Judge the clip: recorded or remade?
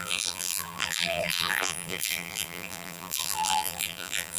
remade